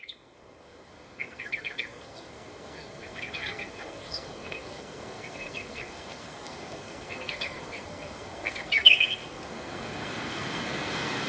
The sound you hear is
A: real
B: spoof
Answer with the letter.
B